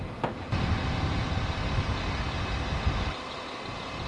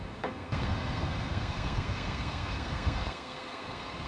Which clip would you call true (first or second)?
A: first